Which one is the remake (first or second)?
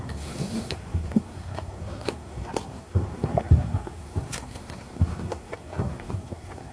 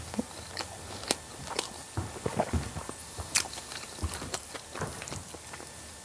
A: first